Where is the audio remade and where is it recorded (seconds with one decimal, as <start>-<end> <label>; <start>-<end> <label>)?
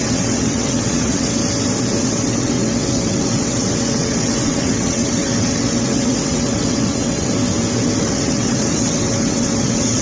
0.0-1.4 remade; 1.4-2.0 recorded; 2.0-7.3 remade; 7.3-8.0 recorded; 8.0-10.0 remade